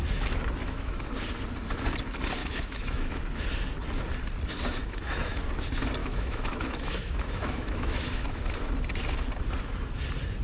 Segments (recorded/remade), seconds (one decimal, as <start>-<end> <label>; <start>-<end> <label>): 0.0-0.6 recorded; 0.6-1.1 remade; 1.1-2.4 recorded; 2.4-3.2 remade; 3.2-4.8 recorded; 4.8-5.4 remade; 5.4-6.0 recorded; 6.0-8.7 remade; 8.7-10.4 recorded